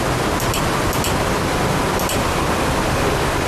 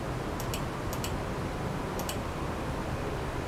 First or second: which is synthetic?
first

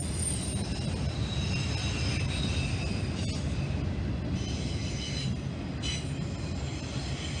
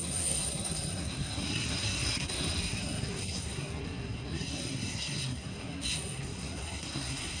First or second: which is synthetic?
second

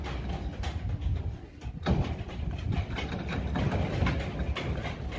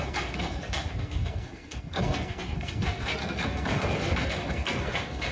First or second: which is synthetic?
second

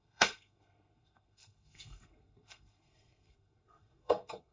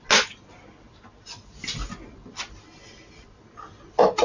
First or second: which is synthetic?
first